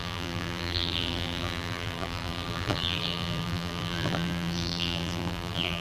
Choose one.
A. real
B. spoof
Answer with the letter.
B